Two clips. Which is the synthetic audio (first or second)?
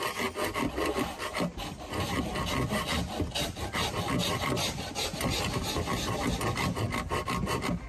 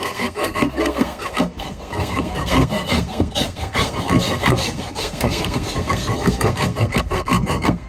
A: second